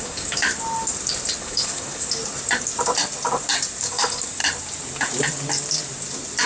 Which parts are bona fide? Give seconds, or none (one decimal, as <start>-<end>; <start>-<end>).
0.5-1.4; 2.2-3.8; 4.4-6.5